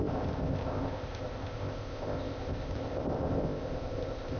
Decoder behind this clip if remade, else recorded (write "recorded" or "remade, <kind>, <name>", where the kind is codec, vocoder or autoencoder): remade, codec, ZipCodec